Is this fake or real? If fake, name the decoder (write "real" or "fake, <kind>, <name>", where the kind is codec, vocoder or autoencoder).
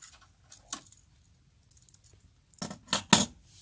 real